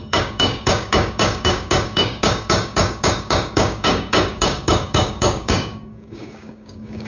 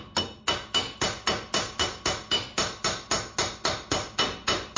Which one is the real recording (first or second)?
second